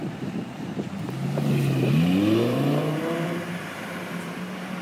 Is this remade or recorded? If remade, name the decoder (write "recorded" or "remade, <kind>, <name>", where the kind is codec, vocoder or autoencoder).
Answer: remade, vocoder, BigVGAN v2